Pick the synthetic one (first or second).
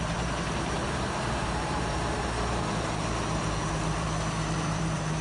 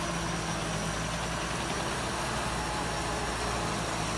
first